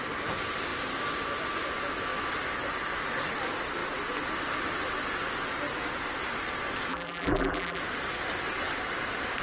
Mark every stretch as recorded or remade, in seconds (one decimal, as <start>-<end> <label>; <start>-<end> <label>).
0.0-6.9 recorded; 6.9-7.8 remade; 7.8-9.4 recorded